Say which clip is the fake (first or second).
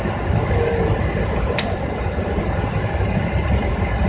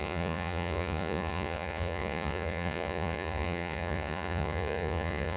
second